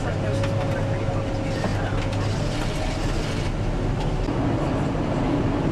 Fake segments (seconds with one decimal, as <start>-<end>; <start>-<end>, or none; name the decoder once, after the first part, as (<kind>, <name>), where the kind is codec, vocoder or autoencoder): none